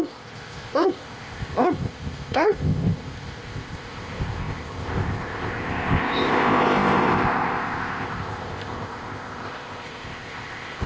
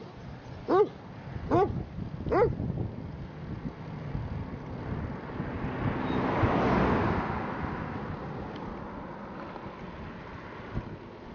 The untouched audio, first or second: second